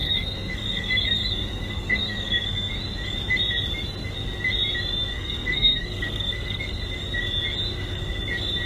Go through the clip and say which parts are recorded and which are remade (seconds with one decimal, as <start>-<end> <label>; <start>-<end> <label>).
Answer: 0.0-2.7 remade; 2.7-5.1 recorded; 5.1-6.8 remade; 6.8-8.7 recorded